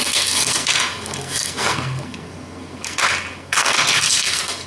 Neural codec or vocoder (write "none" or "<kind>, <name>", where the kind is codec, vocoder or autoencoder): codec, SNAC